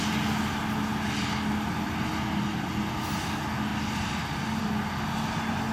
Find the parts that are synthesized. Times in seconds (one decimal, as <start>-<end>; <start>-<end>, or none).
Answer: none